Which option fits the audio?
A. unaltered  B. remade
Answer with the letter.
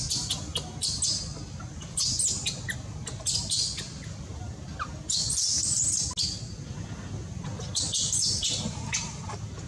A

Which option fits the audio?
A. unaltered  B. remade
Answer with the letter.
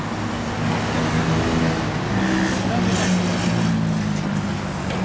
A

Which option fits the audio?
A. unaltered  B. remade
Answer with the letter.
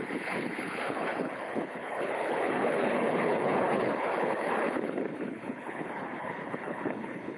B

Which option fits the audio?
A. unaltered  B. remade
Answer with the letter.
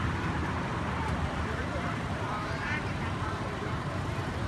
B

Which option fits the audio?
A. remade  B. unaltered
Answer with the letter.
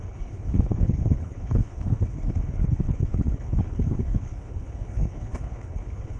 A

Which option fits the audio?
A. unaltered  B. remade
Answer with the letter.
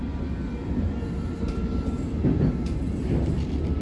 A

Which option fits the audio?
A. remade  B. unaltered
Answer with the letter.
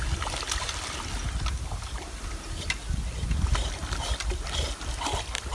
B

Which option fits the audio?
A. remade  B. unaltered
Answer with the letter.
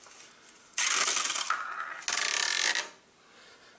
B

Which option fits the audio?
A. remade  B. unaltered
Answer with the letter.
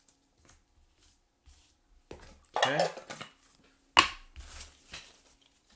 B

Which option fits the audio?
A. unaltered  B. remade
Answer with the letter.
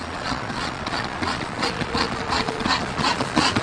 B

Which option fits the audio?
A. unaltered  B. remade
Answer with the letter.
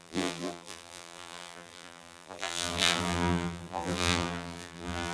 B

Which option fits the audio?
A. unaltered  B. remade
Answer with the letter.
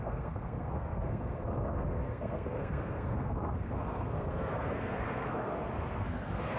B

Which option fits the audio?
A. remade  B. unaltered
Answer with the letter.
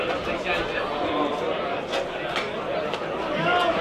B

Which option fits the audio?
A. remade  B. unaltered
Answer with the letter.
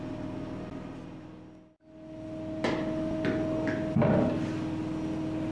B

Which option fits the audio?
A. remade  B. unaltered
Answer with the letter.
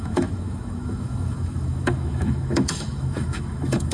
A